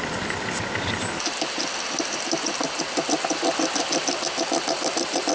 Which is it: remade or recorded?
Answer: recorded